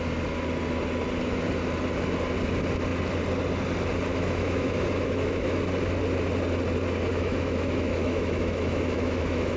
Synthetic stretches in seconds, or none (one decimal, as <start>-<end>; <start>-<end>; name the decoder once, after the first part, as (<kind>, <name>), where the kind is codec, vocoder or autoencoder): 4.1-5.6 (autoencoder, DAC-VAE); 7.1-9.6